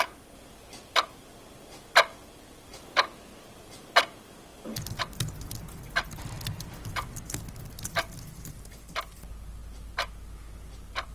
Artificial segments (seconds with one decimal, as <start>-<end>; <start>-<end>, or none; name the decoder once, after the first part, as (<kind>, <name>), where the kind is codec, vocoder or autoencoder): 2.7-3.7 (vocoder, BigVGAN v2)